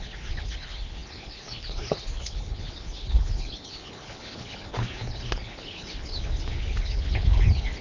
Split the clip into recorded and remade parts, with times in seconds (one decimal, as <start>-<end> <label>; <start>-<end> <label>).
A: 0.0-7.8 remade